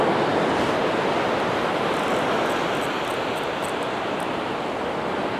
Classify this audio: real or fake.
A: real